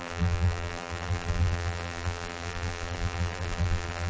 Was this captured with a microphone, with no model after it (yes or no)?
no